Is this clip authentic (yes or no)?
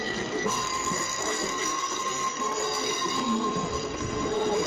no